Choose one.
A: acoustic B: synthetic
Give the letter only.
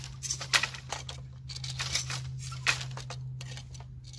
A